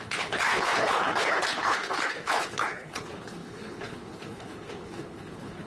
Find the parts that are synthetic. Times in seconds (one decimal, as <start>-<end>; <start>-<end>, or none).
0.0-5.7